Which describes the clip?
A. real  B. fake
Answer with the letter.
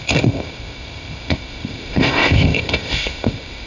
B